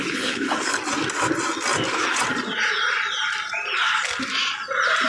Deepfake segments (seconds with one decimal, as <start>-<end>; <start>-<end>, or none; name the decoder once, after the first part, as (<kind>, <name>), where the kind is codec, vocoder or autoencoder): 0.0-0.8 (codec, HILCodec)